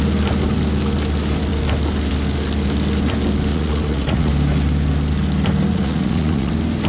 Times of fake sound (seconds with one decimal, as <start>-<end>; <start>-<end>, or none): 3.5-4.3; 5.7-6.5